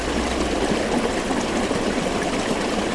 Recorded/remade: recorded